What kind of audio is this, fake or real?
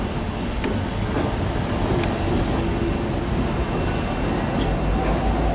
real